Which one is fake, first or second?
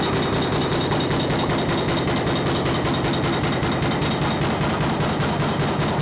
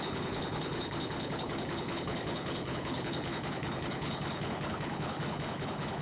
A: second